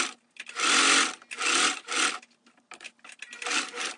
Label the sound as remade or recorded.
recorded